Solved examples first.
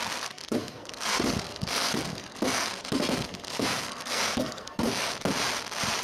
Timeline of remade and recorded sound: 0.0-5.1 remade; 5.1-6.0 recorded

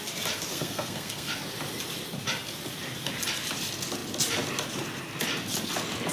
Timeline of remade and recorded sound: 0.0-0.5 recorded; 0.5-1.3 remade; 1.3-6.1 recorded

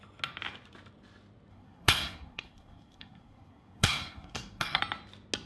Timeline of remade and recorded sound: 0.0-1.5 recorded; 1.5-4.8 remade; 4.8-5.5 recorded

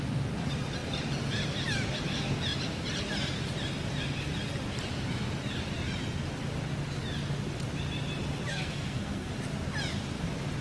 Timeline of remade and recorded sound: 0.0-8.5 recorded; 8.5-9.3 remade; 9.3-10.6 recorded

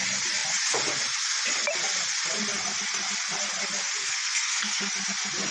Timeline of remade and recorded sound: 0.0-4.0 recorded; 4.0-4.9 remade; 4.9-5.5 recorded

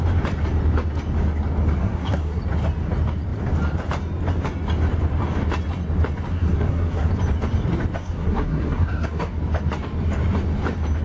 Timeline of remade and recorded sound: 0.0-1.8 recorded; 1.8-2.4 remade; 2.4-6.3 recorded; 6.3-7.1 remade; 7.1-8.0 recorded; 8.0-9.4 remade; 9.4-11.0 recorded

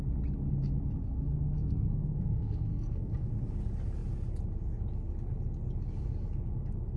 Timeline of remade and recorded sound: 0.0-1.0 recorded; 1.0-3.3 remade; 3.3-7.0 recorded